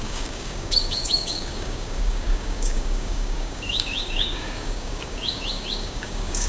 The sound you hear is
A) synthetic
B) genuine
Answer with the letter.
A